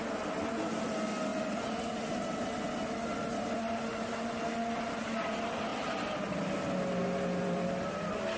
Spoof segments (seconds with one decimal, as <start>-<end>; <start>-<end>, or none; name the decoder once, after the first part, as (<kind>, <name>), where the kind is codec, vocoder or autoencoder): none